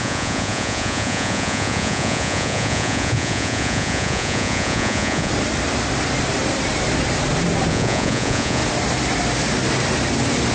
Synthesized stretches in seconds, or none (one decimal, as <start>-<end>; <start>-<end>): 0.0-5.3; 7.7-8.6